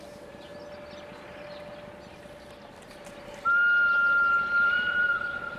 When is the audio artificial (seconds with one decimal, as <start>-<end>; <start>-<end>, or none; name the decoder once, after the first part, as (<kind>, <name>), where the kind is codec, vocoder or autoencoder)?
0.0-0.5 (vocoder, BigVGAN v2); 3.9-5.6